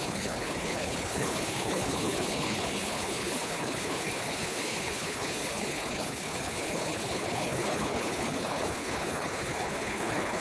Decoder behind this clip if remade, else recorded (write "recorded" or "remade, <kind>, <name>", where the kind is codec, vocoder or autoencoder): remade, codec, HILCodec